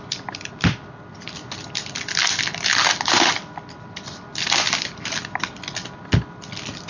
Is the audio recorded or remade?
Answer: recorded